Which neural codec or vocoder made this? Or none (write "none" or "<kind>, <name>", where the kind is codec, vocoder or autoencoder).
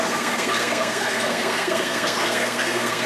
codec, SNAC